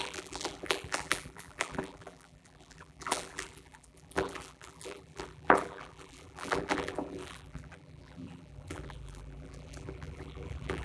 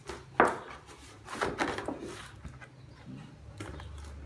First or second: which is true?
second